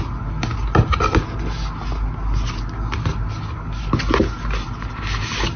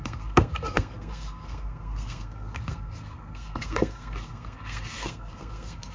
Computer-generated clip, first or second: second